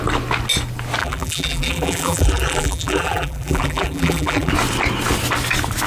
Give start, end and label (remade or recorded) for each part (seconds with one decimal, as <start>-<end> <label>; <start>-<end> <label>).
0.0-1.0 recorded; 1.0-4.5 remade; 4.5-5.9 recorded